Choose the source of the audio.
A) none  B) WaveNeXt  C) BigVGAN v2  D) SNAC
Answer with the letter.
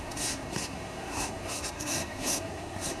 D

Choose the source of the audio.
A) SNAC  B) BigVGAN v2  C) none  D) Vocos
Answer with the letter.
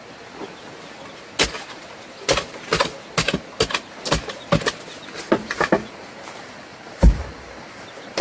C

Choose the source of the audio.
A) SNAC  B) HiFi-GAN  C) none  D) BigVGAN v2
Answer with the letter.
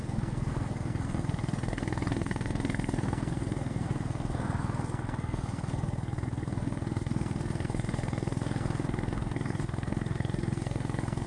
A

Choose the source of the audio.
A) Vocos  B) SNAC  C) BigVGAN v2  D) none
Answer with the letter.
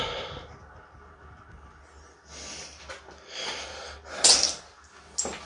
D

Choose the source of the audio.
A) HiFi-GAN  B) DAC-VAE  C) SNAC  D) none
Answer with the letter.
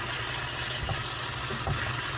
D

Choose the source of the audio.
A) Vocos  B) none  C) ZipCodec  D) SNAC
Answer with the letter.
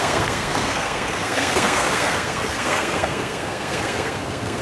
D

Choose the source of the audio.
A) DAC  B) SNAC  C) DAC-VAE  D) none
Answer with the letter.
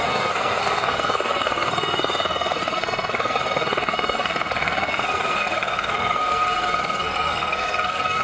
B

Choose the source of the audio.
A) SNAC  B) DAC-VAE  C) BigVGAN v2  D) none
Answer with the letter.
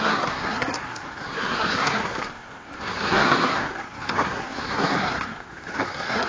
A